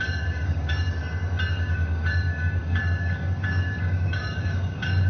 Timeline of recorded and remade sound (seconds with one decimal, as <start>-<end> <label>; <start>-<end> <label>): 0.0-1.0 remade; 1.0-1.5 recorded; 1.5-5.1 remade